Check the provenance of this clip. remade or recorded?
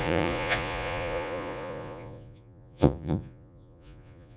remade